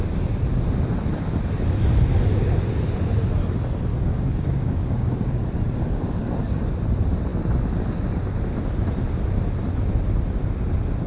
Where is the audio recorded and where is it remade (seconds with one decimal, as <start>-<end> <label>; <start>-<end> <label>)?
0.0-3.9 recorded; 3.9-5.4 remade; 5.4-11.1 recorded